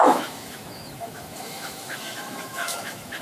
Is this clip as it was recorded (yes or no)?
no